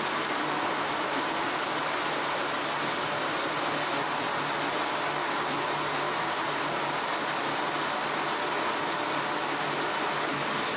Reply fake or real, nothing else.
real